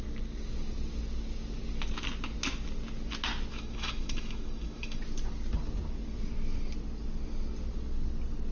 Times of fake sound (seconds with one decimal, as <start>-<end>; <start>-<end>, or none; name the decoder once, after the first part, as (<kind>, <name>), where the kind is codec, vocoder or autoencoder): 3.5-5.0 (autoencoder, DAC-VAE)